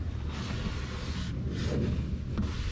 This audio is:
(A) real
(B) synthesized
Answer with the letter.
A